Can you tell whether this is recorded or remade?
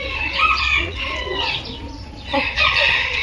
remade